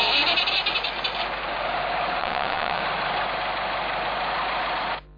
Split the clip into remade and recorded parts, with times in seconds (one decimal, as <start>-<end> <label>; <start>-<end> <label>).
0.0-2.2 recorded; 2.2-2.8 remade; 2.8-5.2 recorded